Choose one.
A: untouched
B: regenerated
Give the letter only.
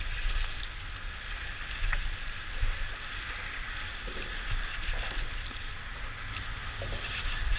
A